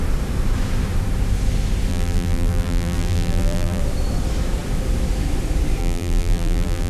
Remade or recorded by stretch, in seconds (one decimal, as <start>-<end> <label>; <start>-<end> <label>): 0.0-1.9 recorded; 1.9-3.8 remade; 3.8-5.8 recorded; 5.8-6.9 remade